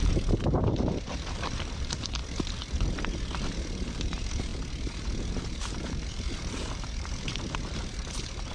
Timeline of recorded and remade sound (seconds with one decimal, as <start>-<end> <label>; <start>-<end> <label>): 0.0-2.2 remade; 2.2-3.5 recorded; 3.5-8.5 remade